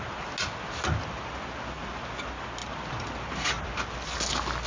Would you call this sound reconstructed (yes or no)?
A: no